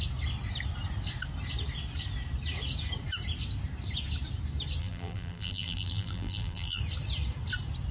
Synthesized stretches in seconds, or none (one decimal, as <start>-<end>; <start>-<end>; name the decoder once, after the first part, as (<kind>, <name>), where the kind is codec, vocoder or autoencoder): 4.8-6.8 (vocoder, BigVGAN v2)